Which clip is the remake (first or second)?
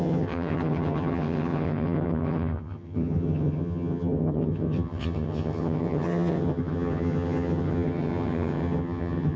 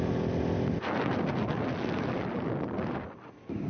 first